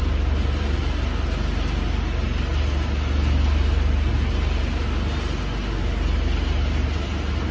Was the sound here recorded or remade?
recorded